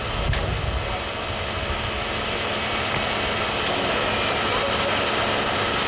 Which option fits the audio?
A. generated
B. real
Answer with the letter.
B